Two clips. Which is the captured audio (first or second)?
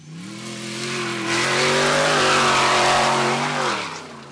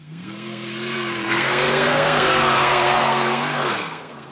first